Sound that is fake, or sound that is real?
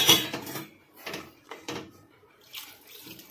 fake